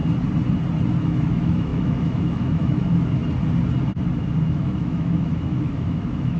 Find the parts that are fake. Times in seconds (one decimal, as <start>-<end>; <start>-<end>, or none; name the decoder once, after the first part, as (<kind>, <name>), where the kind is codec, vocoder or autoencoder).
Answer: 1.0-3.2 (autoencoder, DAC-VAE); 4.5-6.4